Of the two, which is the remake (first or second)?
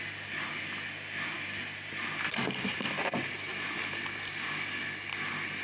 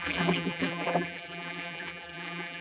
second